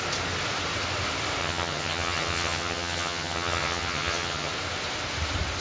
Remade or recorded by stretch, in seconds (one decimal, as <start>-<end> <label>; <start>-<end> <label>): 0.0-1.4 recorded; 1.4-4.5 remade; 4.5-5.6 recorded